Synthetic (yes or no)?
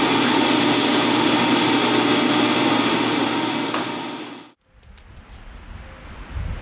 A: no